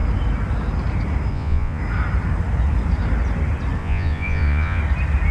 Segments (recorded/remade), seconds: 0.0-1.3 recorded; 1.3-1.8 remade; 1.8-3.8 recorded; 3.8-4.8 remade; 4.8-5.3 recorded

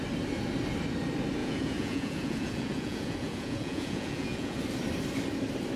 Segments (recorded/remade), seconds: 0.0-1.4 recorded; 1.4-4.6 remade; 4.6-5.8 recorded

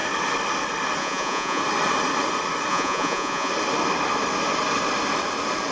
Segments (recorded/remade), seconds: 0.0-1.0 recorded; 1.0-1.6 remade; 1.6-2.7 recorded; 2.7-3.5 remade; 3.5-5.7 recorded